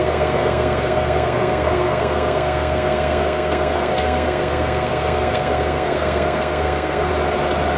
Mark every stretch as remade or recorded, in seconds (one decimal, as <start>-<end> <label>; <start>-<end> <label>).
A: 0.0-7.1 remade; 7.1-7.8 recorded